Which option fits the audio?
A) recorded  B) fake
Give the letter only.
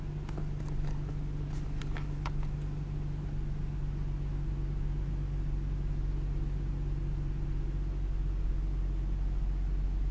A